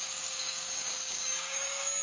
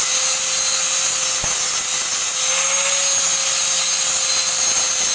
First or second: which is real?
second